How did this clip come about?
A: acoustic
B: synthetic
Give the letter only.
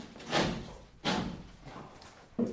A